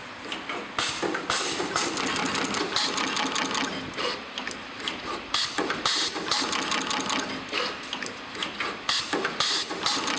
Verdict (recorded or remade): recorded